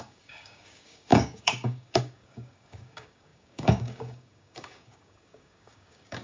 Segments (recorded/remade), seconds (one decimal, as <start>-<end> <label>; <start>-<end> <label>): 0.0-6.2 remade